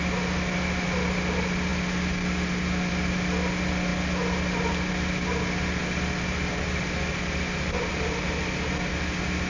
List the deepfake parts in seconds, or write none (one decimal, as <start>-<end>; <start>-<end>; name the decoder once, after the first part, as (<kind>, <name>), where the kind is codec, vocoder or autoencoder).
none